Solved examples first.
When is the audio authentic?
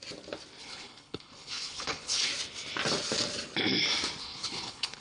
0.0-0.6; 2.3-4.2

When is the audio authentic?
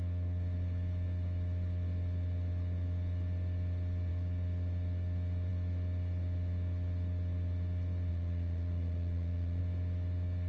0.0-8.1; 9.6-10.5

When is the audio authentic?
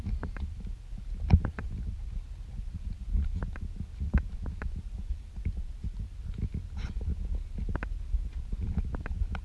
0.0-9.4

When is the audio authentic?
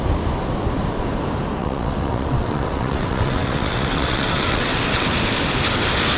0.0-1.6; 4.7-6.2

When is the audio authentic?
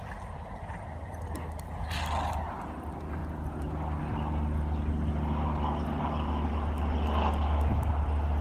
0.0-8.4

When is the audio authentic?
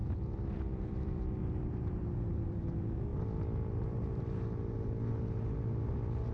2.6-6.3